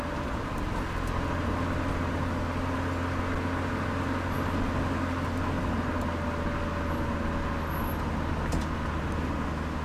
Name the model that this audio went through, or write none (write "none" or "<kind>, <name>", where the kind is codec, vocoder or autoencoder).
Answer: none